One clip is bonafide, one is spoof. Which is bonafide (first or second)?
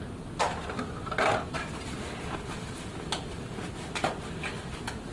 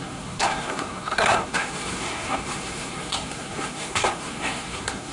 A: first